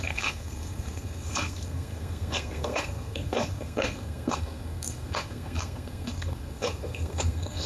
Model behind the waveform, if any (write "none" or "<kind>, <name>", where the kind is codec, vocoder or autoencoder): codec, SNAC